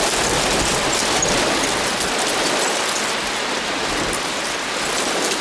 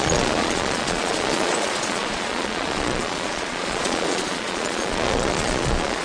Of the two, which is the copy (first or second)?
second